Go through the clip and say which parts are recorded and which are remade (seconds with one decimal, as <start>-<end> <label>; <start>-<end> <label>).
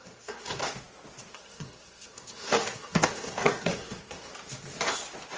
0.0-0.6 remade; 0.6-1.3 recorded; 1.3-4.3 remade; 4.3-5.4 recorded